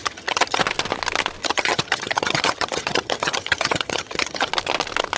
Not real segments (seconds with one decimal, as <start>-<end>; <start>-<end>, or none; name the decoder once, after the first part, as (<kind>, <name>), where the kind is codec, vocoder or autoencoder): 0.0-0.6 (vocoder, HiFi-GAN); 1.4-4.5